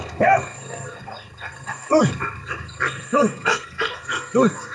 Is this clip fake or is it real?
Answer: fake